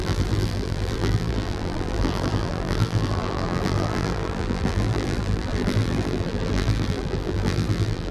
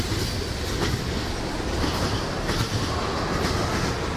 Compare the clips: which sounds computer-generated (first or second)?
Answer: first